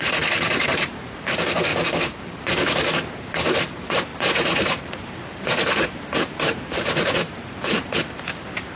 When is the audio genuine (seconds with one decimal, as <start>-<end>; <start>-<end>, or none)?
1.7-2.4